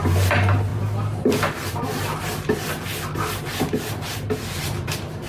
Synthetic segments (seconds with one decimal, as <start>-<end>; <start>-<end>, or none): none